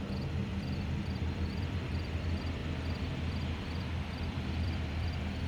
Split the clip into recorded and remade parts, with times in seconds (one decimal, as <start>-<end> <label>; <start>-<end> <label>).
0.0-0.4 recorded; 0.4-2.2 remade; 2.2-2.6 recorded; 2.6-5.5 remade